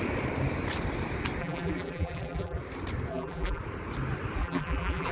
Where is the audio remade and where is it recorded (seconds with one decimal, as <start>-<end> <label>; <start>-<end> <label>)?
0.0-1.4 recorded; 1.4-2.6 remade; 2.6-3.1 recorded; 3.1-3.6 remade; 3.6-4.4 recorded; 4.4-5.1 remade